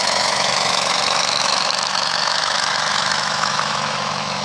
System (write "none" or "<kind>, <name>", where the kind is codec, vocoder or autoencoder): autoencoder, DAC-VAE